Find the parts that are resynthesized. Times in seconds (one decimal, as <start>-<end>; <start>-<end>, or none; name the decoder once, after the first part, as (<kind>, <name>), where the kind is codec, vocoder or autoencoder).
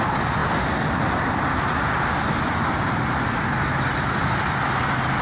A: none